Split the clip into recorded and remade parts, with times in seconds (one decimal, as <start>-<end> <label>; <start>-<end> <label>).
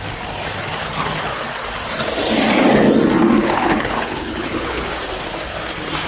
0.0-0.8 recorded; 0.8-1.5 remade; 1.5-3.4 recorded; 3.4-4.9 remade; 4.9-6.1 recorded